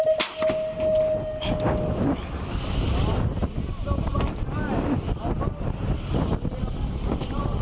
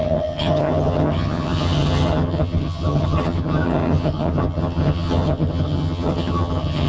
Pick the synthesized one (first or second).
second